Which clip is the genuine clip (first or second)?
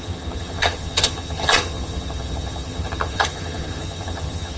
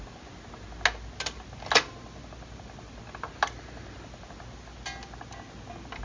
second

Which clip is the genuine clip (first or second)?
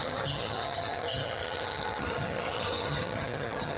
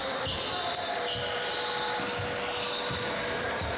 second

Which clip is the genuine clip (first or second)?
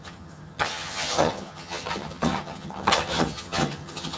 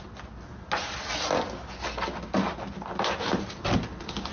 second